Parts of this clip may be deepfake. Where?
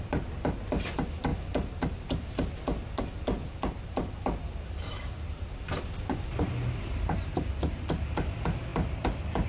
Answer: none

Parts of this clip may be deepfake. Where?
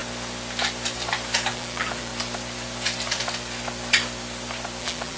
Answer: 1.5-2.1 (vocoder, BigVGAN v2); 4.8-5.2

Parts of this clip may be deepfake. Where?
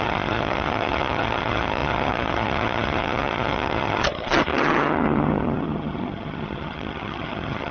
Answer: 0.0-7.7 (vocoder, HiFi-GAN)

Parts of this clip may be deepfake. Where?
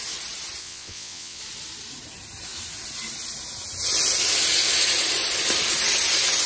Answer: 0.6-1.4 (vocoder, WaveNeXt)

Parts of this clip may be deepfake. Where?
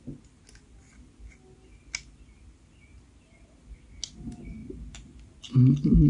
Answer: none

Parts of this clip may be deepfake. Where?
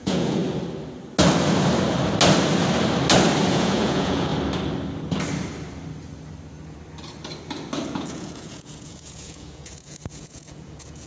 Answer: 0.0-0.4 (vocoder, Vocos); 3.5-4.3; 7.9-11.1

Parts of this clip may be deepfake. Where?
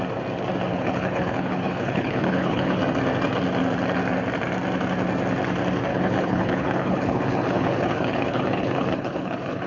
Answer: 0.7-2.8 (codec, HILCodec); 5.9-9.7